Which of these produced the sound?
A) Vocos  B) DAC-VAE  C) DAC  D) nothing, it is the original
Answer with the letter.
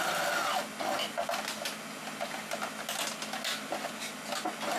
D